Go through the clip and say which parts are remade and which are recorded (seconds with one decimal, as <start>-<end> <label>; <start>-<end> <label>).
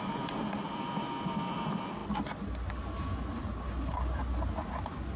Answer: 0.0-5.2 recorded